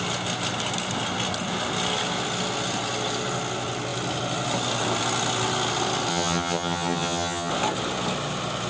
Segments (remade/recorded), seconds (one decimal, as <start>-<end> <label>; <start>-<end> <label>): 0.0-6.1 recorded; 6.1-7.5 remade; 7.5-8.7 recorded